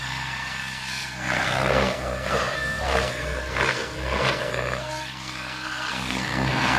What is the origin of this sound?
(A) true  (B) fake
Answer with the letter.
B